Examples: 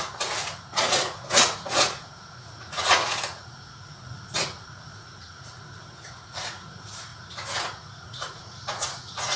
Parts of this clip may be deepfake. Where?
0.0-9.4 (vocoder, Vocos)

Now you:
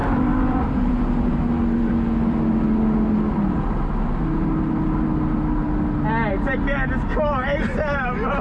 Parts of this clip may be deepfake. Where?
0.0-0.9 (vocoder, BigVGAN v2)

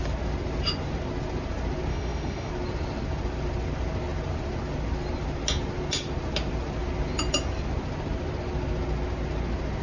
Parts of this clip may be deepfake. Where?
1.9-2.5 (autoencoder, DAC-VAE)

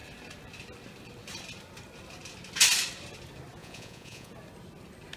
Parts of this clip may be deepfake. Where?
3.6-4.3 (vocoder, Vocos)